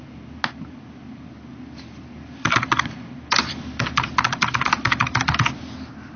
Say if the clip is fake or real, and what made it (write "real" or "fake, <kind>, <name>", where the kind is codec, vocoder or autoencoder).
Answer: real